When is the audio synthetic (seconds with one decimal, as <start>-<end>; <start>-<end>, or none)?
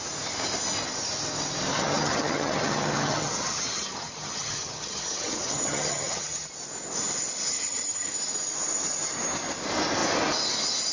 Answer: 1.7-6.5; 7.5-8.1